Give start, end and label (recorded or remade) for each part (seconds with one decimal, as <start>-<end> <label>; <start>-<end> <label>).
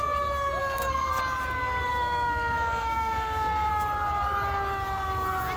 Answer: 0.0-0.6 recorded; 0.6-1.1 remade; 1.1-1.9 recorded; 1.9-3.7 remade; 3.7-5.6 recorded